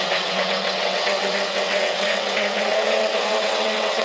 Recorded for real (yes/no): no